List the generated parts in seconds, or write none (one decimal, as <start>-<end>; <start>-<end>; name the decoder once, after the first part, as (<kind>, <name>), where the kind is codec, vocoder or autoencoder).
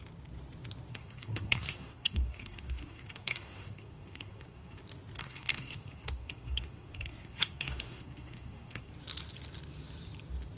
0.9-4.8 (codec, SNAC); 5.2-8.9